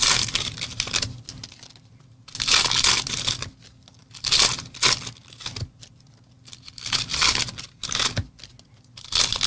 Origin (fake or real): real